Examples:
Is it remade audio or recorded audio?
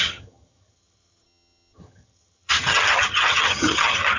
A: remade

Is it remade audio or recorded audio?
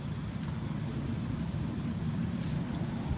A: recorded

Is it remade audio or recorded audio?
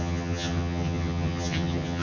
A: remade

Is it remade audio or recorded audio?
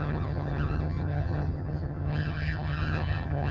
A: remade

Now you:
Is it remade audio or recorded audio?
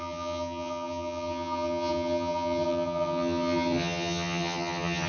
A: remade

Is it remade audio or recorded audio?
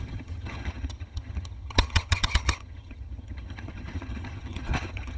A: remade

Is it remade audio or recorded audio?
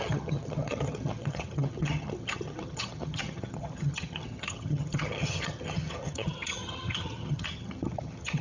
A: remade